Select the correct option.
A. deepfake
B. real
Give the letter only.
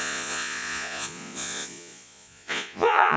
A